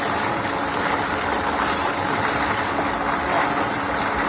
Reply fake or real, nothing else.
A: real